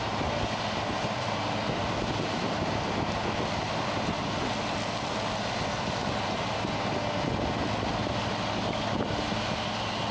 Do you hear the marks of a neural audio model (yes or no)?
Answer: no